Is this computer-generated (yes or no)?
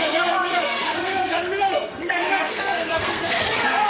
yes